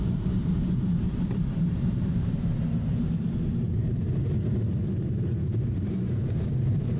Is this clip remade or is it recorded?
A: remade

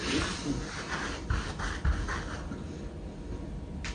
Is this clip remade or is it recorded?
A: recorded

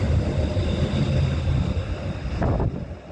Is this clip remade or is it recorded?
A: recorded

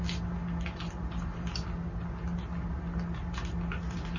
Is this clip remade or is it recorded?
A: recorded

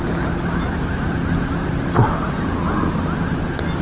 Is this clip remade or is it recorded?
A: recorded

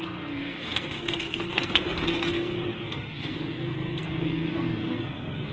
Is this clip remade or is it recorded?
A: remade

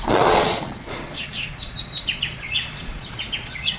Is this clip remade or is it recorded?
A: remade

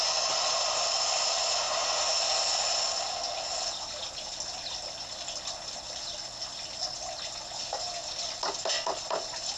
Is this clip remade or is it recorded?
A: recorded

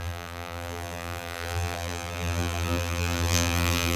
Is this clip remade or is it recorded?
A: remade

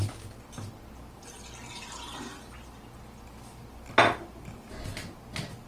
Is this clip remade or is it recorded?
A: recorded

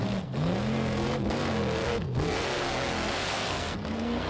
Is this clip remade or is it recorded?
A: remade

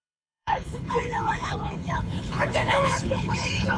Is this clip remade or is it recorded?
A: remade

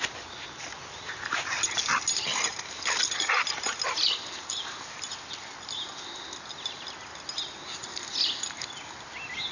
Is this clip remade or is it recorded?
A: recorded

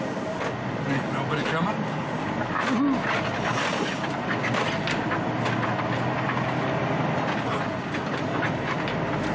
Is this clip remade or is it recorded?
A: recorded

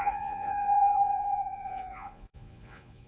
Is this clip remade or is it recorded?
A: remade